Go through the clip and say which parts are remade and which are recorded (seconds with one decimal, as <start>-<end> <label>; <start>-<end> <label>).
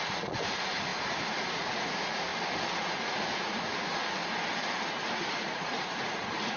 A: 0.0-2.3 remade; 2.3-2.8 recorded; 2.8-4.2 remade; 4.2-4.9 recorded; 4.9-6.6 remade